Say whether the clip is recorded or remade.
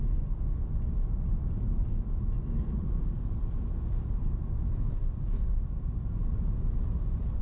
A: remade